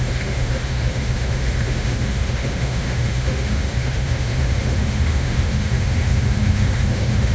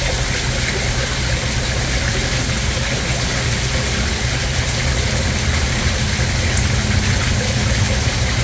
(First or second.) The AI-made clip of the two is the first